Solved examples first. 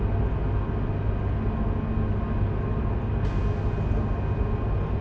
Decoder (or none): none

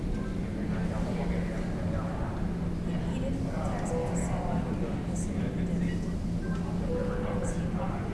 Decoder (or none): none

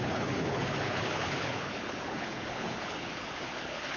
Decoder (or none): codec, HILCodec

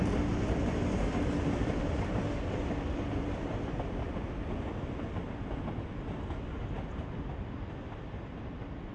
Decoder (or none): none